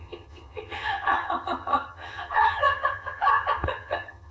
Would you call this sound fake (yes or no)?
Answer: yes